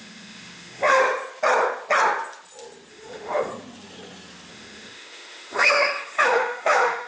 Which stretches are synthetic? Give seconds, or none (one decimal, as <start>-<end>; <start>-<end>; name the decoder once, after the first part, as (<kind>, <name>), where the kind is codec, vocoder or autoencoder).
0.0-1.0 (autoencoder, DAC-VAE); 2.9-3.5; 4.5-7.1